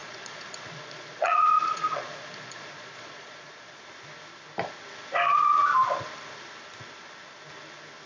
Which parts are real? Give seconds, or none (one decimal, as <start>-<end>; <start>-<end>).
3.8-8.1